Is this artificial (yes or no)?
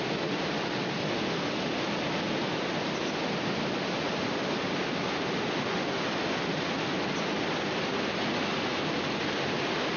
no